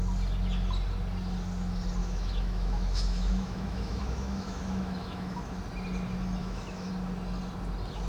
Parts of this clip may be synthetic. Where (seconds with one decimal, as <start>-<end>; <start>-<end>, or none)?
2.0-5.6; 6.4-6.9